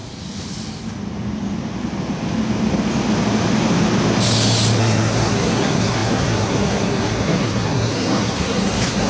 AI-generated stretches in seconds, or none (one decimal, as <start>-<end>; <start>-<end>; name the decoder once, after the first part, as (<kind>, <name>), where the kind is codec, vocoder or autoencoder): 4.8-9.1 (codec, SNAC)